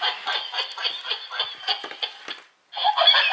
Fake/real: real